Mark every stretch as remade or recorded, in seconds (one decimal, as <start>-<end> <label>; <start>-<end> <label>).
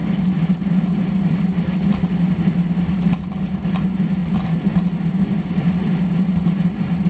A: 0.0-4.2 recorded; 4.2-5.1 remade; 5.1-7.1 recorded